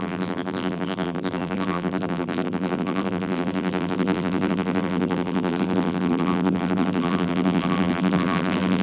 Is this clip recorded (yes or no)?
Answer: no